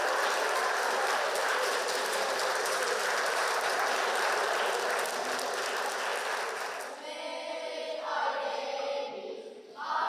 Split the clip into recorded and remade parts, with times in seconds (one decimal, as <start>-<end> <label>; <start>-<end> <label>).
0.0-1.4 recorded; 1.4-4.6 remade; 4.6-10.1 recorded